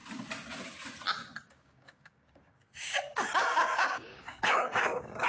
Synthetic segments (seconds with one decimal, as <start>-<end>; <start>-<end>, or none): 1.5-5.3